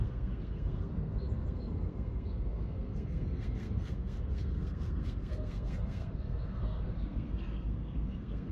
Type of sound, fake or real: fake